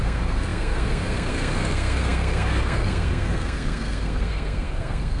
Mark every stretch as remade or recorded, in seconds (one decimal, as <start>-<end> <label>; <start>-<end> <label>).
0.0-5.2 remade